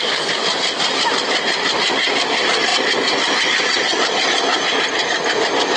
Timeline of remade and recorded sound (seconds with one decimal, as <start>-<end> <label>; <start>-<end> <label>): 0.0-5.8 recorded